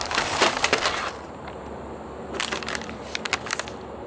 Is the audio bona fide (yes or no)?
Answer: yes